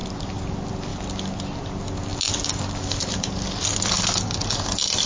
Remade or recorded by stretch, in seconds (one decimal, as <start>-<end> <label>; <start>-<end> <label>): 0.0-5.1 recorded